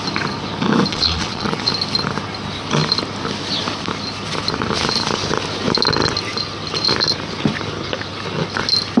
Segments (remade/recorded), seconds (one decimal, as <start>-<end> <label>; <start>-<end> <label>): 0.0-0.9 recorded; 0.9-1.7 remade; 1.7-9.0 recorded